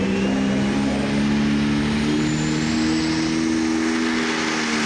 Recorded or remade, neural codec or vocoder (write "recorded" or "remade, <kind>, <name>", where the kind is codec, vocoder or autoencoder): recorded